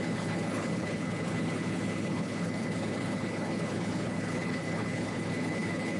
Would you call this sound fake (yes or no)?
yes